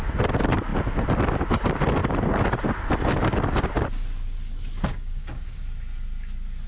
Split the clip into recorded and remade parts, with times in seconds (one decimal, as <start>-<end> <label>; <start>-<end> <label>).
0.0-4.9 recorded; 4.9-5.6 remade; 5.6-6.7 recorded